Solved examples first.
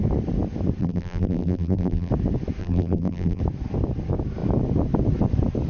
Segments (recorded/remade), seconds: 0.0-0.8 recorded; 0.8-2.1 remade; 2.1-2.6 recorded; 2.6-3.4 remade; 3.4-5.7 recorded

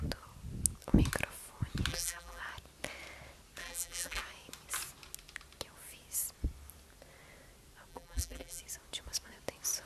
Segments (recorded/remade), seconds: 0.0-1.9 recorded; 1.9-2.4 remade; 2.4-3.6 recorded; 3.6-4.2 remade; 4.2-7.9 recorded; 7.9-8.6 remade; 8.6-9.9 recorded

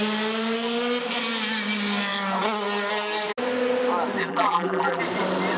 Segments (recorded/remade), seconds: 0.0-4.2 recorded; 4.2-5.0 remade; 5.0-5.6 recorded

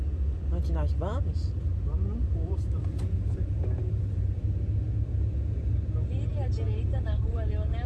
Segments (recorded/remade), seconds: 0.0-2.2 recorded; 2.2-4.2 remade; 4.2-7.9 recorded

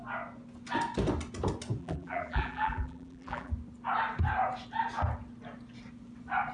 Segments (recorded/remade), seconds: 0.0-1.8 recorded; 1.8-3.5 remade; 3.5-6.5 recorded

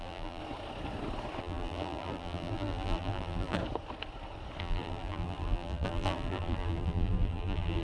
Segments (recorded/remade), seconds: 0.0-0.4 remade; 0.4-1.4 recorded; 1.4-3.6 remade; 3.6-4.6 recorded; 4.6-7.8 remade